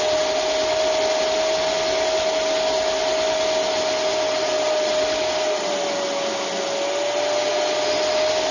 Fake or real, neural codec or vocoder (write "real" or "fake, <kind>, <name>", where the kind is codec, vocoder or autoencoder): real